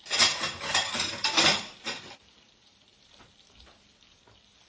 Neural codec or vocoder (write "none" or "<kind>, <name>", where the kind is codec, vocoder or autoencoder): none